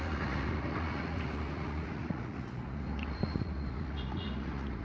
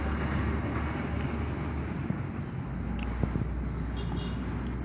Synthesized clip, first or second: first